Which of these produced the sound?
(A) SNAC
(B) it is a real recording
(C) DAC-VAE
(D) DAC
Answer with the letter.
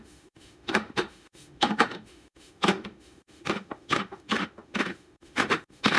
C